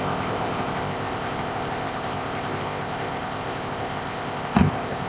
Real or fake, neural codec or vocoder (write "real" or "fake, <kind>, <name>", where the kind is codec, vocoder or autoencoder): fake, codec, ZipCodec